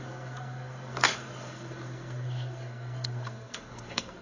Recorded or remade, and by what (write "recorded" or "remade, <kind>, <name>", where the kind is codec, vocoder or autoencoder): remade, codec, SNAC